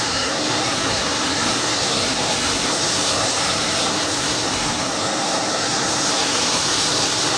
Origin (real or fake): fake